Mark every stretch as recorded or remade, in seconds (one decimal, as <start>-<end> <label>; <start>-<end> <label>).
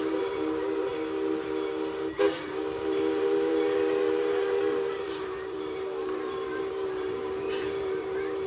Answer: 0.0-0.9 remade; 0.9-2.6 recorded; 2.6-8.5 remade